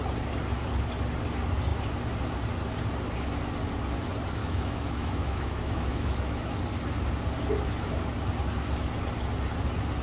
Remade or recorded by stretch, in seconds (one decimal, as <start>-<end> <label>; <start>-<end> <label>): 0.0-4.4 recorded; 4.4-6.6 remade; 6.6-10.0 recorded